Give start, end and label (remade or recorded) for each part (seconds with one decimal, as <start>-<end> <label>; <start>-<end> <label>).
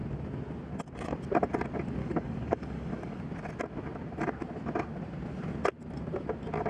0.0-2.0 recorded; 2.0-3.2 remade; 3.2-6.7 recorded